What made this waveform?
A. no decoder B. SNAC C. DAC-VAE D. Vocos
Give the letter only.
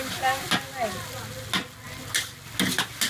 A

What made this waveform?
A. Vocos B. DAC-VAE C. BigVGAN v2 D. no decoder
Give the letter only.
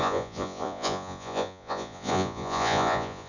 A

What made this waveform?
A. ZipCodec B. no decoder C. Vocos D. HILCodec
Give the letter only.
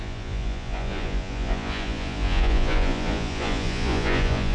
C